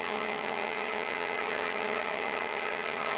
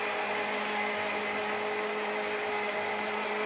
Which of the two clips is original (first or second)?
second